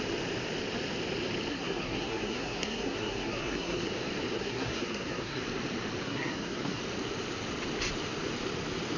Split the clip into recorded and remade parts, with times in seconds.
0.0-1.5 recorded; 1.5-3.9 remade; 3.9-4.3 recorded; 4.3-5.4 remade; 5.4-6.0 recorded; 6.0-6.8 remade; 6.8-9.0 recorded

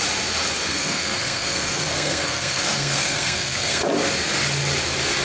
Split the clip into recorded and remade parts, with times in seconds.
0.0-0.7 recorded; 0.7-3.8 remade; 3.8-5.2 recorded

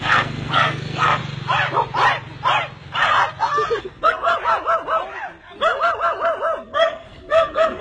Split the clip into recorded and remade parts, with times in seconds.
0.0-1.2 remade; 1.2-3.8 recorded; 3.8-4.3 remade; 4.3-6.6 recorded; 6.6-7.8 remade